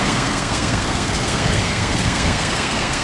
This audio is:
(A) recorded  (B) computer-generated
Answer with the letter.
B